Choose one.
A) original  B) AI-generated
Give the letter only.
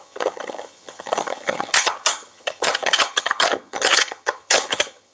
B